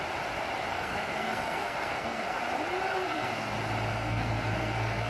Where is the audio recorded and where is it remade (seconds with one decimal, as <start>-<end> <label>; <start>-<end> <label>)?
0.0-0.7 recorded; 0.7-2.4 remade; 2.4-2.9 recorded; 2.9-3.5 remade; 3.5-3.9 recorded; 3.9-5.1 remade